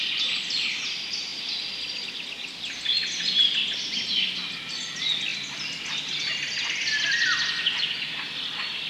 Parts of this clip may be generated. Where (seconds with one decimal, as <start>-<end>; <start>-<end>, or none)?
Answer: none